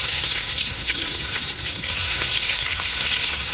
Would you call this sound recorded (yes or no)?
no